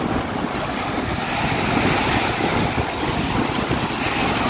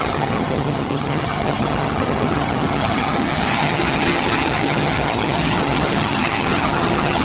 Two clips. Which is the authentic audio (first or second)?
first